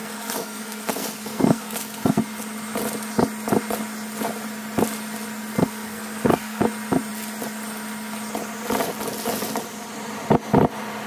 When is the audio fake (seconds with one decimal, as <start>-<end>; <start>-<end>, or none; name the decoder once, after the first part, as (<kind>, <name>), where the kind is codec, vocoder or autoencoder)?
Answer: 0.0-2.2 (codec, SNAC); 5.5-6.6